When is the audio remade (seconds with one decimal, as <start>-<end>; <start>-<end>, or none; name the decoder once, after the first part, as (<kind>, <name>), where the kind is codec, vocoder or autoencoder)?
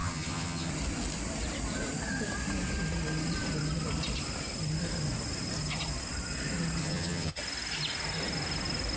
0.0-0.7 (vocoder, HiFi-GAN); 6.8-7.4